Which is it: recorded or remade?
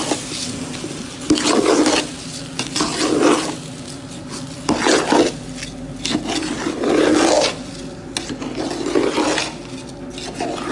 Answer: recorded